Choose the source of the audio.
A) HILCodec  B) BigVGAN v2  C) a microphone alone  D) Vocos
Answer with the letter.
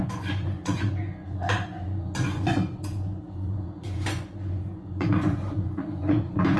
D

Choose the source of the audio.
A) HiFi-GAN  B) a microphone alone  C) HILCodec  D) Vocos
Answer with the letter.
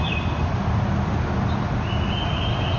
B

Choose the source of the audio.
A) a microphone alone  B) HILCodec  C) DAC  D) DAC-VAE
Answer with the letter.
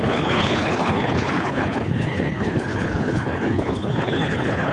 B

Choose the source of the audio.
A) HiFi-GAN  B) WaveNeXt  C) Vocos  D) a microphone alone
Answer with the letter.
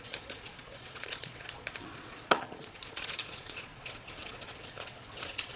C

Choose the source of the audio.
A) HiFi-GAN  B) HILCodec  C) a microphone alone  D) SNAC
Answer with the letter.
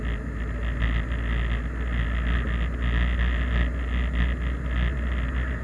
C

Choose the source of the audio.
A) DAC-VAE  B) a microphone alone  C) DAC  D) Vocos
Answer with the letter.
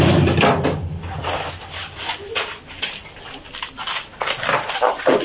B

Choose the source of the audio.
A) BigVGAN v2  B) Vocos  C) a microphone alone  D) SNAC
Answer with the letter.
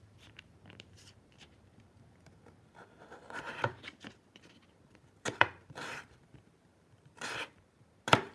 A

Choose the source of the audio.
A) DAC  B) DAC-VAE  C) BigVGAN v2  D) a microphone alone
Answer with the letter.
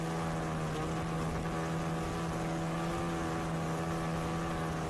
D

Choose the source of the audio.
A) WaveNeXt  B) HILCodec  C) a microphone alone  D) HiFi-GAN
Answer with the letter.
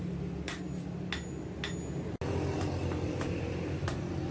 C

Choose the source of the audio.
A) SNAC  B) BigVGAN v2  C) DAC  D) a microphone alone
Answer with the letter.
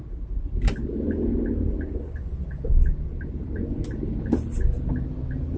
D